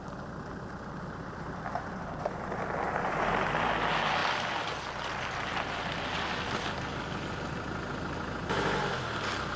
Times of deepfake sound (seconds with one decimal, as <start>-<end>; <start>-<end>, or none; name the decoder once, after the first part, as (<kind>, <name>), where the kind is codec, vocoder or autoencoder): none